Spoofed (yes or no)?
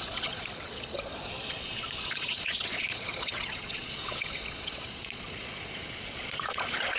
yes